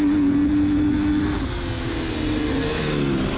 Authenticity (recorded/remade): recorded